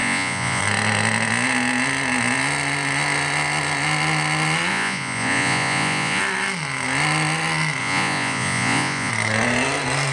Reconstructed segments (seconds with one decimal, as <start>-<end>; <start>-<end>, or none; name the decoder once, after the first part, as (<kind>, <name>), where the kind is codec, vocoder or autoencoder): 0.0-0.6 (vocoder, Vocos); 4.7-6.2; 7.8-9.1